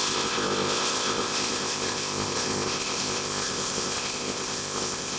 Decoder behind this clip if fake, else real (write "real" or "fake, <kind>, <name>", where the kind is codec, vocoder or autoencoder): fake, codec, ZipCodec